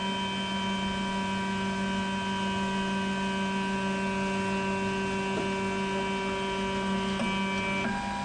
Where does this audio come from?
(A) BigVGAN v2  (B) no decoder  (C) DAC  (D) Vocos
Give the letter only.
B